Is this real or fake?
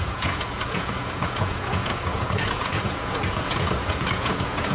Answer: fake